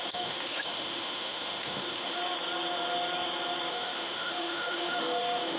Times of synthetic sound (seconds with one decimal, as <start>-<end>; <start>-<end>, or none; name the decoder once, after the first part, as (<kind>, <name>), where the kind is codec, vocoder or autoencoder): 0.0-2.2 (autoencoder, DAC-VAE); 3.7-5.6